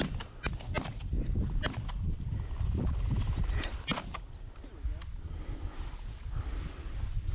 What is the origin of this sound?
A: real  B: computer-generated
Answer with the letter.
A